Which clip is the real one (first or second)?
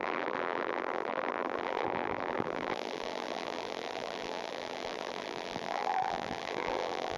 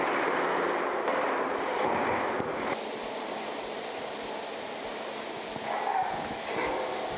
second